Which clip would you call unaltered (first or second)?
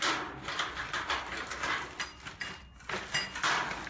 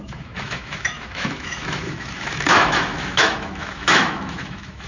first